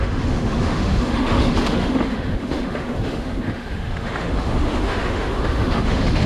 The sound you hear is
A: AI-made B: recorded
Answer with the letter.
A